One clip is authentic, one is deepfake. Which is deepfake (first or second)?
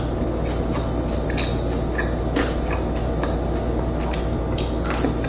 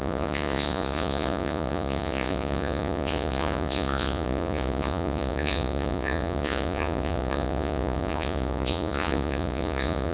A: second